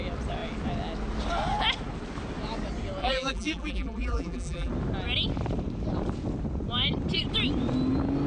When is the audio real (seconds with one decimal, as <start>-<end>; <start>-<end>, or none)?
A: 0.0-3.0; 4.7-8.3